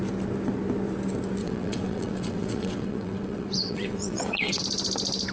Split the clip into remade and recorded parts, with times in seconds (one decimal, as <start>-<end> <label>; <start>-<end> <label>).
0.0-1.4 recorded; 1.4-4.6 remade; 4.6-5.3 recorded